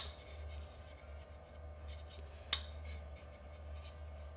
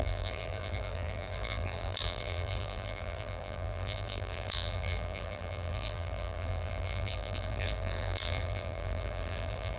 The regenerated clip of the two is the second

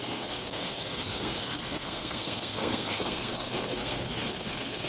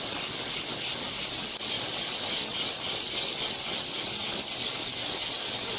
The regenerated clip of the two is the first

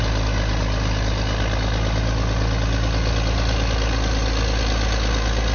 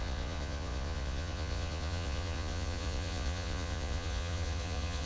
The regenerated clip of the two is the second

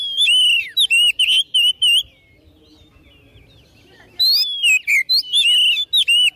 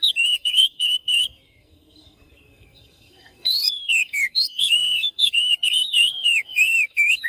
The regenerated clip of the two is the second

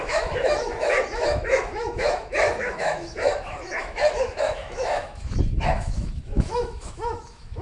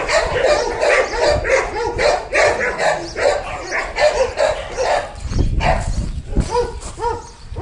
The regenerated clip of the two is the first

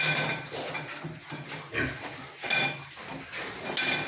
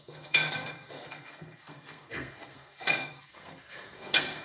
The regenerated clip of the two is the second